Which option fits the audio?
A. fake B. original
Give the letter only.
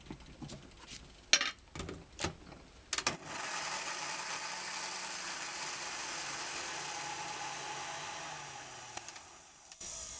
B